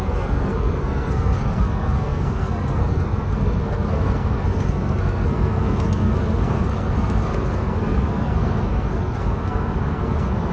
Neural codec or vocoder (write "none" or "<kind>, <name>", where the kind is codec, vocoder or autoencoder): codec, SNAC